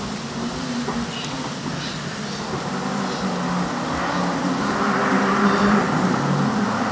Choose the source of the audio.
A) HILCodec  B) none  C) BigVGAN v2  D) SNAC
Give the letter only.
B